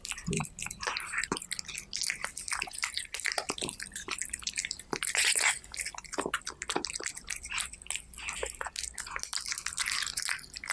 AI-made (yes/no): no